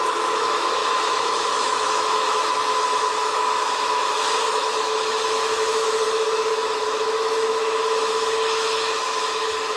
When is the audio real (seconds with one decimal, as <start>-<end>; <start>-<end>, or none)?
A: none